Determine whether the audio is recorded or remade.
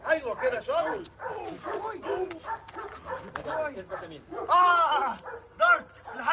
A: recorded